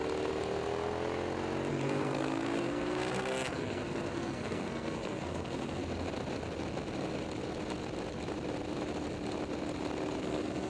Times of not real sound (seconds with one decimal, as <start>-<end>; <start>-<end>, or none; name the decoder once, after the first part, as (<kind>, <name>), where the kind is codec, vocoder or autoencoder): 1.7-5.8 (codec, SNAC); 10.2-10.7